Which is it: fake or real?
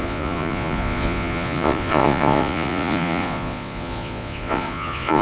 fake